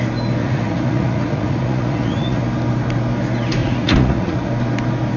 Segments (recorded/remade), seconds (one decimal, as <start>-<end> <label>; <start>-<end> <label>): 0.0-0.4 recorded; 0.4-2.4 remade; 2.4-3.6 recorded; 3.6-4.5 remade; 4.5-5.2 recorded